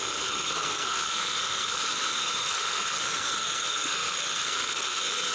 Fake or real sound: fake